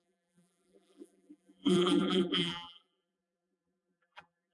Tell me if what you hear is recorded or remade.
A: remade